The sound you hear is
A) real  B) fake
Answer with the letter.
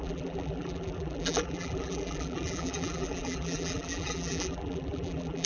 B